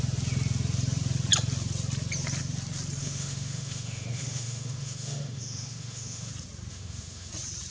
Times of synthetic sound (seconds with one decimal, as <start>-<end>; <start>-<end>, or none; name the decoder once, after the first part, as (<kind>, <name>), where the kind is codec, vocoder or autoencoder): 3.0-6.3 (autoencoder, DAC-VAE); 6.7-7.3